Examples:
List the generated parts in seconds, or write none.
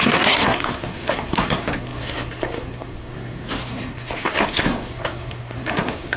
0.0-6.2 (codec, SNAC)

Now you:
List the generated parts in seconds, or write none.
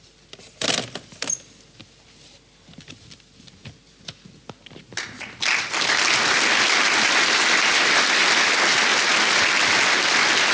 none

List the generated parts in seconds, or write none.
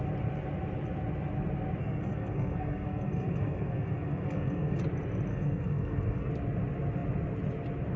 1.8-4.8 (codec, SNAC); 5.3-6.3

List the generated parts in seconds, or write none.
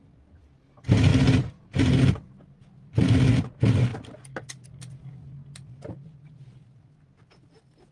none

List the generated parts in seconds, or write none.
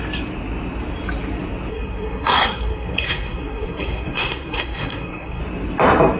1.7-5.4 (codec, SNAC)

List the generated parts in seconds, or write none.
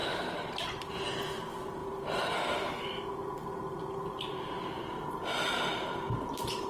none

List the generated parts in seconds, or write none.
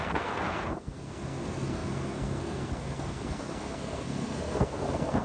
0.0-5.2 (codec, SNAC)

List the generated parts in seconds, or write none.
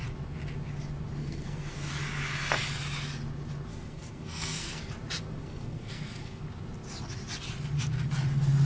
1.2-1.9 (codec, SNAC); 3.7-4.9; 5.4-6.4